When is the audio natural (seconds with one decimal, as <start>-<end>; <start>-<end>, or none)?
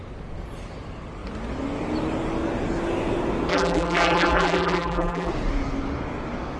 0.0-3.5; 5.3-6.6